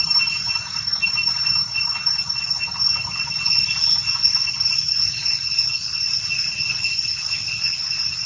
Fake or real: real